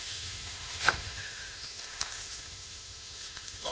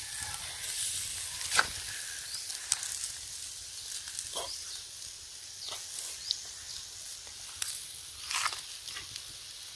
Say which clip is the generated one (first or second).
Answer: first